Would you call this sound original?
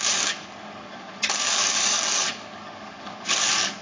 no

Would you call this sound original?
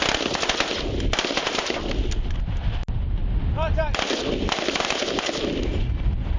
yes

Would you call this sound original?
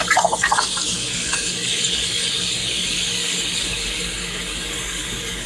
no